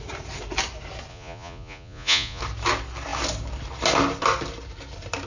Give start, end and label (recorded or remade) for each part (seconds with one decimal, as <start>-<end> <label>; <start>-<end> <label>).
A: 0.0-1.1 recorded; 1.1-2.4 remade; 2.4-5.3 recorded